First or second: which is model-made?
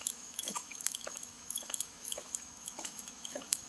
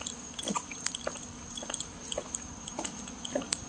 first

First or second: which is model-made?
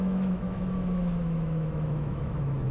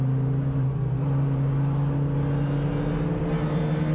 first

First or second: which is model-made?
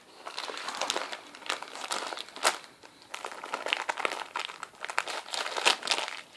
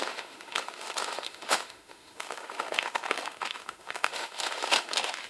second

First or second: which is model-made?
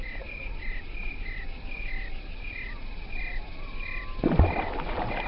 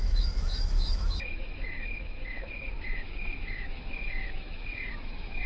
second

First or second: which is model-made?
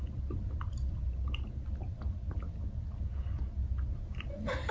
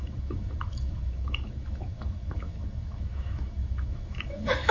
second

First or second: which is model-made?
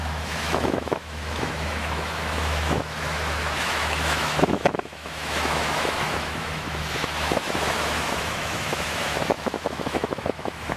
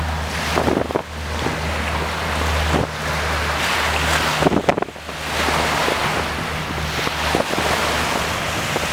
first